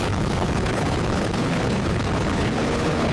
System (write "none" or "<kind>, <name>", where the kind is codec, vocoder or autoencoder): codec, HILCodec